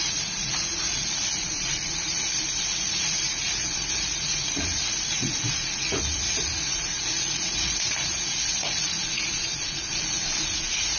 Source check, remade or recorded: remade